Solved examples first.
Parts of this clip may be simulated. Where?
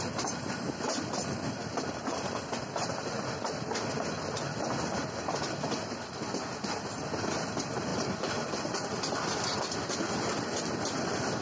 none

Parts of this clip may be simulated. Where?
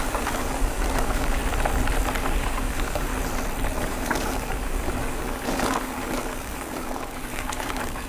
0.0-1.4; 2.2-3.1; 3.8-8.1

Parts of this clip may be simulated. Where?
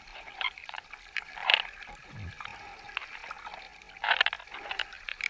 0.0-1.5; 4.6-5.3